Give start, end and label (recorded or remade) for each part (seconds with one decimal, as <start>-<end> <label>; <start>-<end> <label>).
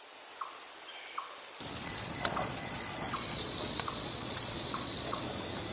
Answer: 0.0-1.8 recorded; 1.8-5.2 remade; 5.2-5.7 recorded